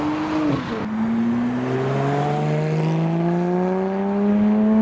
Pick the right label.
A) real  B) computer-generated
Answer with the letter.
A